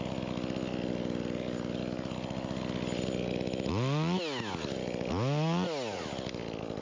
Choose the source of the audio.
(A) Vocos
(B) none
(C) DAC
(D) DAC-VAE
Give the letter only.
B